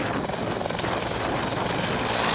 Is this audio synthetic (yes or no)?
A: no